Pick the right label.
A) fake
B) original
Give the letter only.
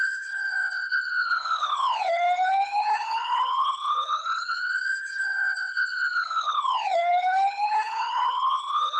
A